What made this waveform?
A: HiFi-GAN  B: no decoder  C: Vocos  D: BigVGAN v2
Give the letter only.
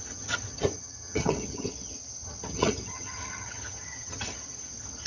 A